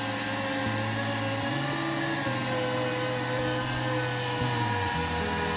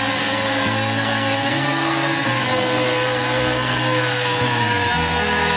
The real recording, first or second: first